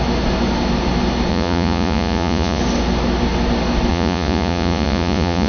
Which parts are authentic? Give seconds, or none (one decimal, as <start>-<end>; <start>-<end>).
0.0-1.3; 2.6-3.9